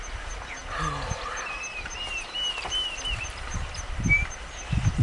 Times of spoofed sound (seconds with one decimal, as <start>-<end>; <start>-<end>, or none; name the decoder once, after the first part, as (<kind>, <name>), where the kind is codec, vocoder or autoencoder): none